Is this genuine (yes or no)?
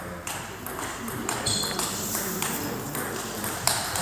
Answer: no